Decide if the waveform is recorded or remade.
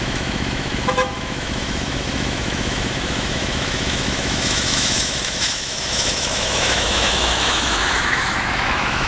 remade